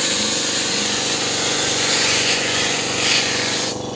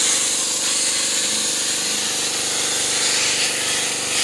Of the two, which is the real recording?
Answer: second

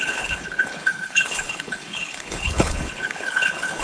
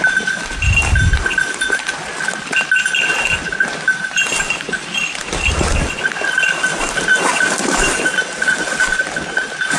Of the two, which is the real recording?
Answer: second